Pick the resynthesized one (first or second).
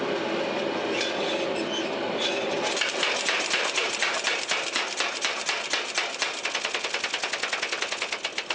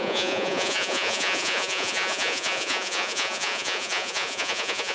second